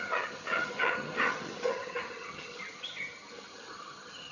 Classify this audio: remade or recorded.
remade